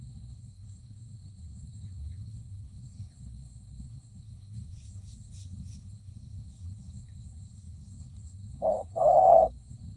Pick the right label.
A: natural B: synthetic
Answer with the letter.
B